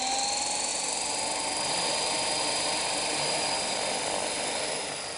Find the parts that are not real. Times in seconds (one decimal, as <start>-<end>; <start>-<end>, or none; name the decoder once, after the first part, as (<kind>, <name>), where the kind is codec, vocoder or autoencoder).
0.7-3.8 (vocoder, BigVGAN v2)